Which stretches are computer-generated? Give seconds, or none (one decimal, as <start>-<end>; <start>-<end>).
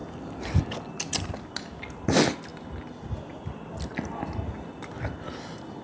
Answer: none